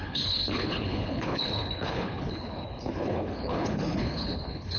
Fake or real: fake